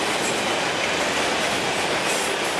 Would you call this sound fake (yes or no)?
no